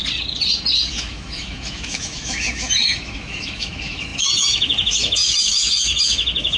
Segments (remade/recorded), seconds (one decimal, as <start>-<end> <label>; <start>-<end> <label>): 0.0-0.9 recorded; 0.9-6.6 remade